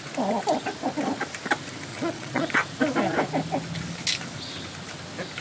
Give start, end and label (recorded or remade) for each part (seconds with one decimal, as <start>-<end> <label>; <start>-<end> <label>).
0.0-1.9 recorded; 1.9-2.5 remade; 2.5-5.4 recorded